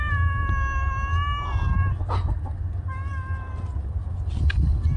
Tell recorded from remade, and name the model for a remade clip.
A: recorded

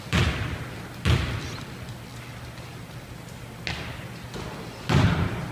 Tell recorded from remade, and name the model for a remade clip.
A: recorded